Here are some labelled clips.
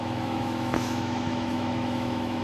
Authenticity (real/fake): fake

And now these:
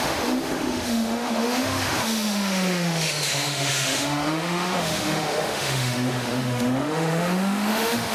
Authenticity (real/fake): fake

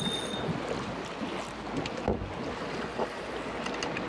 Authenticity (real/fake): real